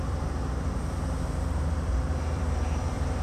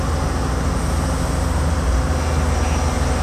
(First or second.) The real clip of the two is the second